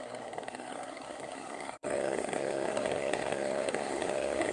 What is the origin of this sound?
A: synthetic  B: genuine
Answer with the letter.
A